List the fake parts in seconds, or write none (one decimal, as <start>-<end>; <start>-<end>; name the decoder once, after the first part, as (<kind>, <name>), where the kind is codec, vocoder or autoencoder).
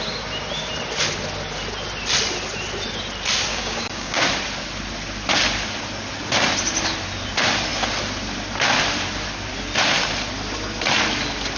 3.5-4.2 (codec, DAC)